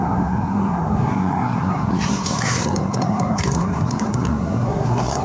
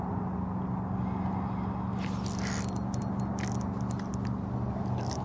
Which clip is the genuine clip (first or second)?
second